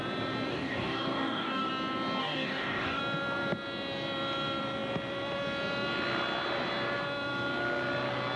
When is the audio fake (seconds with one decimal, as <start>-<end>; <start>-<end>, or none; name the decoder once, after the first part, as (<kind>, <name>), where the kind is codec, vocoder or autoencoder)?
0.5-1.7 (codec, DAC); 2.2-3.0